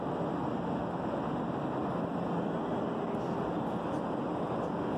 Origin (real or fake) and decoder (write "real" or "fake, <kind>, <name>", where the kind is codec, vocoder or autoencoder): real